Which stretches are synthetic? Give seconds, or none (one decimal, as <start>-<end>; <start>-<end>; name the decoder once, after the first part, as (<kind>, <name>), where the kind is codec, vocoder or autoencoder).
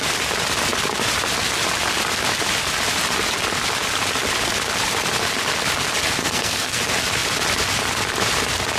6.2-6.8 (codec, SNAC)